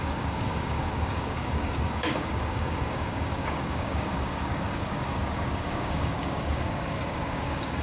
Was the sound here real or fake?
fake